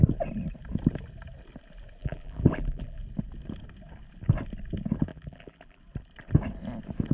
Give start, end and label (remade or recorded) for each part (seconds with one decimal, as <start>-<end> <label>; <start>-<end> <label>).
0.0-2.0 recorded; 2.0-3.0 remade; 3.0-5.1 recorded; 5.1-5.8 remade; 5.8-7.1 recorded